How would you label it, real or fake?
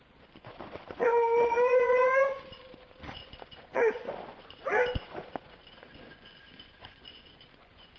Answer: fake